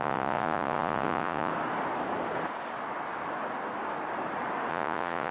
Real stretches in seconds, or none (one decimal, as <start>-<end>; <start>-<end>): 1.5-4.7